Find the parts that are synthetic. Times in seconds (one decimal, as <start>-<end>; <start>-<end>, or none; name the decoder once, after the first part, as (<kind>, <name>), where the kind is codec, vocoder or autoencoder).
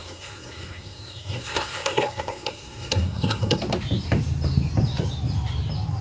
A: 0.0-3.6 (codec, SNAC)